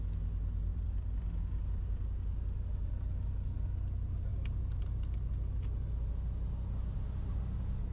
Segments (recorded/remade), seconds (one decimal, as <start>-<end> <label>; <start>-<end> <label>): 0.0-0.7 recorded; 0.7-1.4 remade; 1.4-7.9 recorded